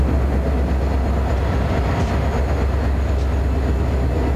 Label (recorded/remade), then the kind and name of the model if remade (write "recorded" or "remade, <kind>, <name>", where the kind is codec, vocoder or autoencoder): recorded